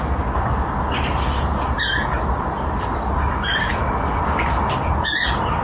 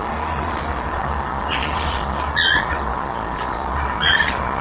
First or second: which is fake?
second